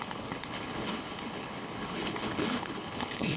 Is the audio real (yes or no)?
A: no